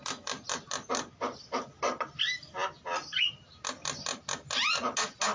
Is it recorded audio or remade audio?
recorded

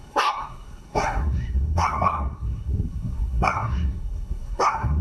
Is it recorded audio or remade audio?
remade